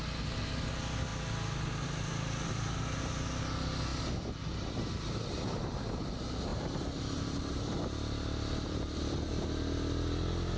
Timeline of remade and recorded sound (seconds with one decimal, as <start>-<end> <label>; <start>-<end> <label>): 0.0-3.9 recorded; 3.9-6.0 remade; 6.0-6.5 recorded; 6.5-9.1 remade; 9.1-10.6 recorded